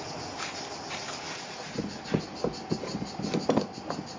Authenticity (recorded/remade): recorded